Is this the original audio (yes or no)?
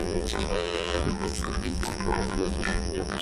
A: no